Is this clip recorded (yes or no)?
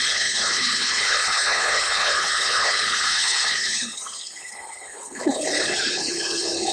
no